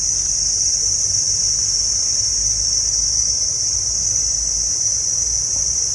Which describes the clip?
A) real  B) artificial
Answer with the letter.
A